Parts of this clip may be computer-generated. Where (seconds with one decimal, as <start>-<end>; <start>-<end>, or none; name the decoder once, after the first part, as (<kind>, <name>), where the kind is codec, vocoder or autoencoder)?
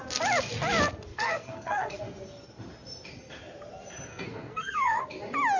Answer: 1.1-2.0 (codec, SNAC); 4.1-5.0